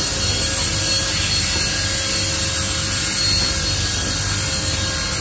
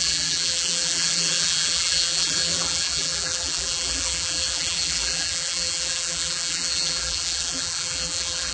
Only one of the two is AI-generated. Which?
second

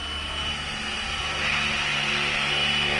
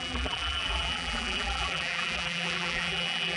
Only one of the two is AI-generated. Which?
second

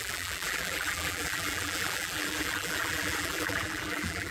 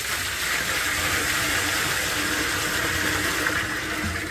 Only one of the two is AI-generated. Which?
first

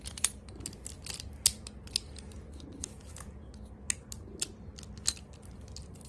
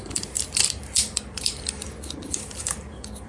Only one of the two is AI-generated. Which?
second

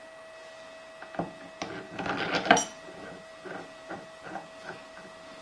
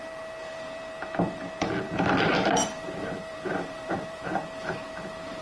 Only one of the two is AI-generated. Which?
second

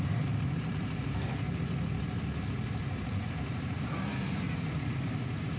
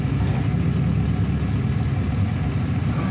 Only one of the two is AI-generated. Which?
first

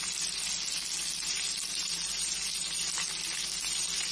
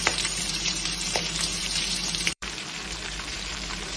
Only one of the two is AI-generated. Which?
second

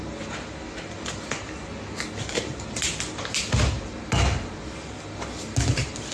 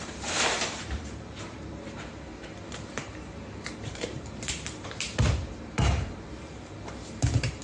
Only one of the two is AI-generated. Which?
second